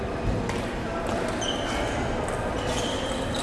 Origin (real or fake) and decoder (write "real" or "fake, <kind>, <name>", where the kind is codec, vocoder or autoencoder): real